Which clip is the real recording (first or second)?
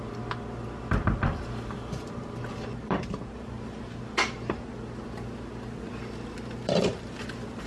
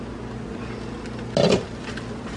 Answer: second